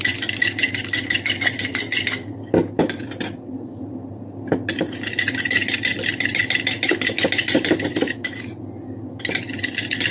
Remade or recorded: recorded